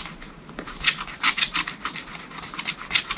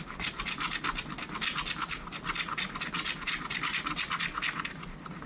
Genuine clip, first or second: second